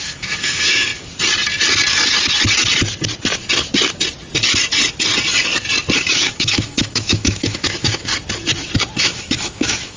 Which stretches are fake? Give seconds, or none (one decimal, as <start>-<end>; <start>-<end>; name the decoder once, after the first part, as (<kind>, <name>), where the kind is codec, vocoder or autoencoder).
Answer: 0.0-0.9 (autoencoder, DAC-VAE); 6.1-8.1; 9.0-10.0